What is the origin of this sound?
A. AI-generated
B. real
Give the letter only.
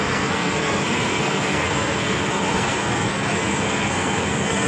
A